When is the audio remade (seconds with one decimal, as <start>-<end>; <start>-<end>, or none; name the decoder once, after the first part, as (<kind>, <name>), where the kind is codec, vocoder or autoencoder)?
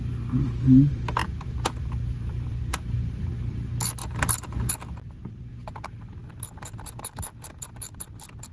1.2-2.7 (vocoder, BigVGAN v2); 4.0-4.7; 6.2-7.5